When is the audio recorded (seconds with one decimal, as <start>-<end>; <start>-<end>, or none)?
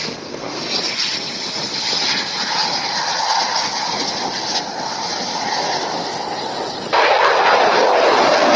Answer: 0.6-8.6